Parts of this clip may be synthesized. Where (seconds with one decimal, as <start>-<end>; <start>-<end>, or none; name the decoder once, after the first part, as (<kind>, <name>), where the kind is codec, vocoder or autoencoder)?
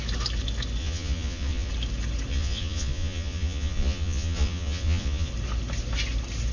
0.8-1.7 (vocoder, Vocos); 2.3-5.3